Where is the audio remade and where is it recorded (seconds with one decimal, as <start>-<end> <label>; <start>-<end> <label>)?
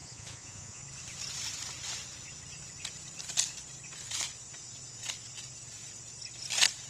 0.0-0.8 remade; 0.8-6.9 recorded